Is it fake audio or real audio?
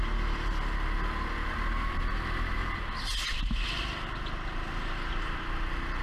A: real